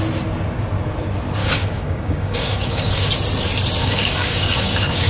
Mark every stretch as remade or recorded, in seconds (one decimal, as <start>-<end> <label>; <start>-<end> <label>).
0.0-1.4 recorded; 1.4-3.1 remade; 3.1-3.8 recorded; 3.8-5.1 remade